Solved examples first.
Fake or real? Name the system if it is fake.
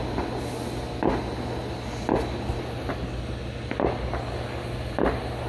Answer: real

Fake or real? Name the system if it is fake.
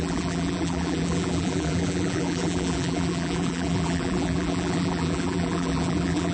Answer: fake, vocoder, BigVGAN v2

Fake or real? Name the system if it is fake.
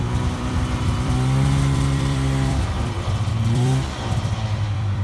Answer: fake, vocoder, BigVGAN v2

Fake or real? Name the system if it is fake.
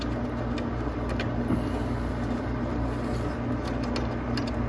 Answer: real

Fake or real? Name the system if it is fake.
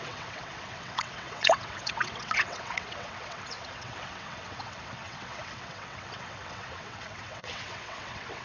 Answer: fake, vocoder, WaveNeXt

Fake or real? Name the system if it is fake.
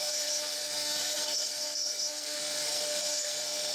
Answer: fake, codec, SNAC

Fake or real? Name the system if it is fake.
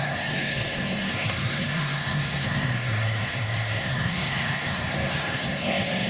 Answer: fake, codec, SNAC